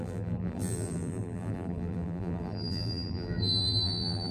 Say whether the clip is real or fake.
fake